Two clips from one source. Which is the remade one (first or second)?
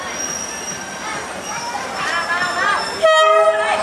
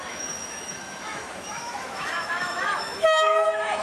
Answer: second